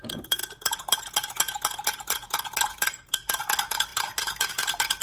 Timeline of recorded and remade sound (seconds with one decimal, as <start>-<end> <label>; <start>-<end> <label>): 0.0-5.0 remade